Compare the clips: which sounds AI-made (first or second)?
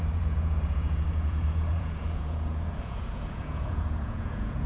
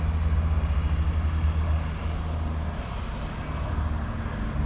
first